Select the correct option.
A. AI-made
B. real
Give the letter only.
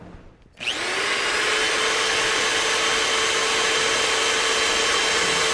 B